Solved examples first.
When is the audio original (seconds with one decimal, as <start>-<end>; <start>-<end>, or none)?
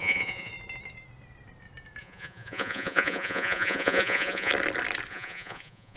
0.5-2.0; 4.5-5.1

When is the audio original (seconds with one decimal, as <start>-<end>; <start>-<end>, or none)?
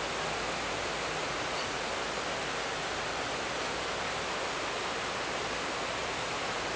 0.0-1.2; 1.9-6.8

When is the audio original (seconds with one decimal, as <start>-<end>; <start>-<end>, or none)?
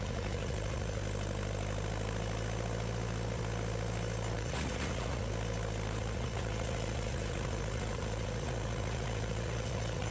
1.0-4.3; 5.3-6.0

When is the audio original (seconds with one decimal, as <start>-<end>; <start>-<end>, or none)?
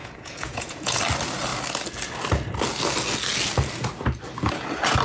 1.0-5.0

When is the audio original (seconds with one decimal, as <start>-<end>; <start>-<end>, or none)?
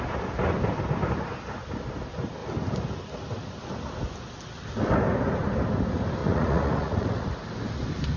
0.0-6.2; 7.3-8.2